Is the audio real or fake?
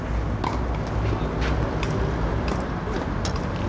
real